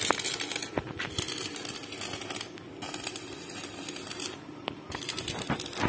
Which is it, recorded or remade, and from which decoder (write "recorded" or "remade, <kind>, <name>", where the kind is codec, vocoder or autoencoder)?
recorded